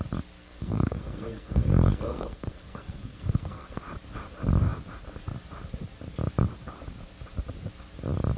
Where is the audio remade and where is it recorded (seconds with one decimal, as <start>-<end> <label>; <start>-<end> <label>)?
0.0-0.4 recorded; 0.4-3.8 remade; 3.8-8.4 recorded